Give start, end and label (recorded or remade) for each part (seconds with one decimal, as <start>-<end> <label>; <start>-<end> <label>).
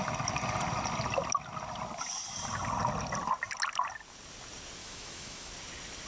0.0-4.8 recorded; 4.8-5.5 remade; 5.5-6.1 recorded